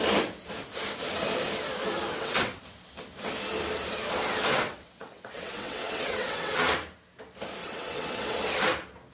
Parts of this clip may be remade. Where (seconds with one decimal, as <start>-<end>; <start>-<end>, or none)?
2.1-2.6; 4.5-6.5; 7.6-8.4